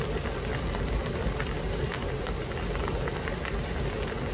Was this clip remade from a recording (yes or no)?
no